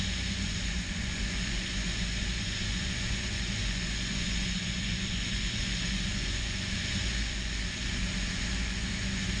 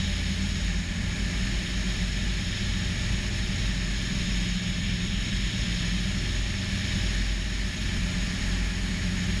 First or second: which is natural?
second